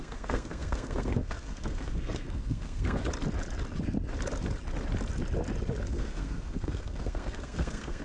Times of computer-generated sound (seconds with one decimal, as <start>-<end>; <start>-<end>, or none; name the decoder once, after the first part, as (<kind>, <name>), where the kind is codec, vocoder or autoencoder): 0.0-3.0 (codec, SNAC); 5.9-8.0